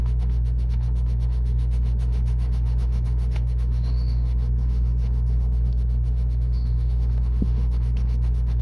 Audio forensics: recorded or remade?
remade